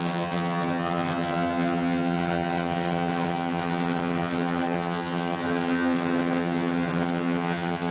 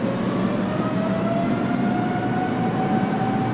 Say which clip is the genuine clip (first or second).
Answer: second